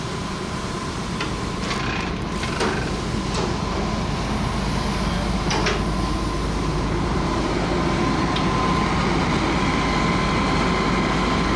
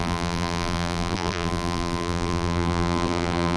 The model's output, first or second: second